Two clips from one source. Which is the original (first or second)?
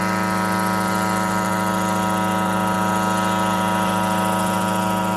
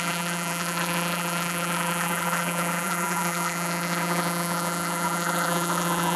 first